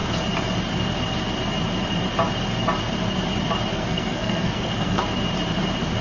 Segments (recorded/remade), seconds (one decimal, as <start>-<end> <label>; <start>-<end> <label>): 0.0-3.7 recorded; 3.7-5.0 remade; 5.0-6.0 recorded